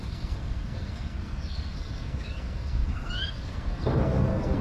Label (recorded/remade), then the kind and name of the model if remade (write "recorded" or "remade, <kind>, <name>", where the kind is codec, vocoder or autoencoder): remade, codec, SNAC